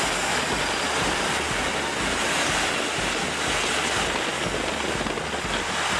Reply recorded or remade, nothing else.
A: recorded